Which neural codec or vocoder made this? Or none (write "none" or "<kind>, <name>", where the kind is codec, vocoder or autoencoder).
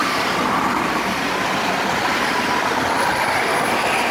none